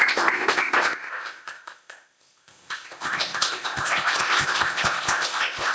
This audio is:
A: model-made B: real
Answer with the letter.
A